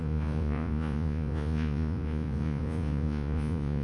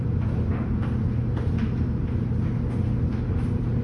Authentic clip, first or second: second